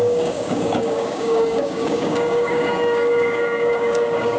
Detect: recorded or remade remade